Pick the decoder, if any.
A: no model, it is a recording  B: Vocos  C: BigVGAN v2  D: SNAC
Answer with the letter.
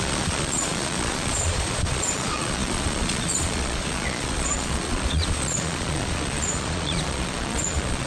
B